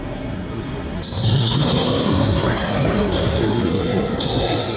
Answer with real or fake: fake